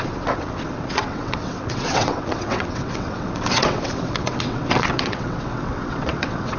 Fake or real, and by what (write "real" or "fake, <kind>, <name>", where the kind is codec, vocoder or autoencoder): fake, vocoder, WaveNeXt